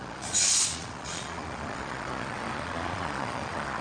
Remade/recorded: remade